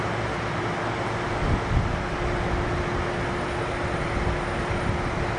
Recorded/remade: recorded